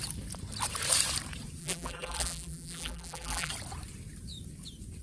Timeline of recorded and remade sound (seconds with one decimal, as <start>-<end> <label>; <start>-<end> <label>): 0.0-1.6 recorded; 1.6-3.5 remade; 3.5-5.0 recorded

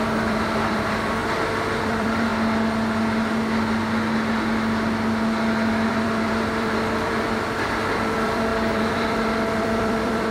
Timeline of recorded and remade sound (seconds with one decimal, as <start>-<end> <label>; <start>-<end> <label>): 0.0-1.2 remade; 1.2-1.8 recorded; 1.8-2.3 remade; 2.3-5.9 recorded; 5.9-10.3 remade

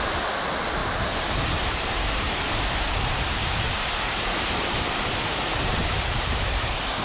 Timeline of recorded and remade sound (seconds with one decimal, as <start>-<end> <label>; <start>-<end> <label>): 0.0-0.8 recorded; 0.8-5.0 remade; 5.0-7.0 recorded